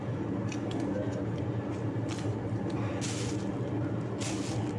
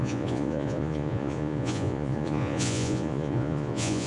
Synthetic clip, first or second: second